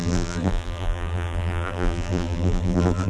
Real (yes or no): no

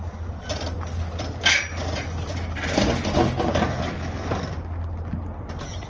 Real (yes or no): no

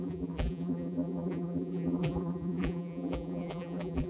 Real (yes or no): no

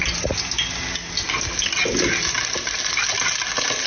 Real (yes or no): yes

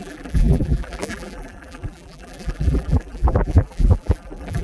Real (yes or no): no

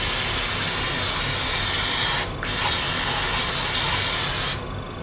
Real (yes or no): yes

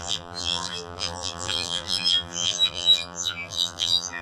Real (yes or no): no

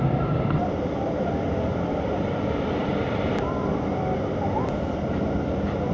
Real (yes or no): no